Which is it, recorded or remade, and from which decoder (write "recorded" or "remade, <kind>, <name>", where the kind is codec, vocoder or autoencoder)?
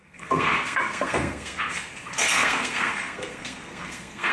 remade, codec, SNAC